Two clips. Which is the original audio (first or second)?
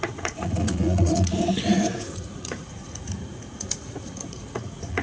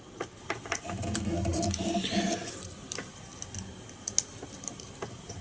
second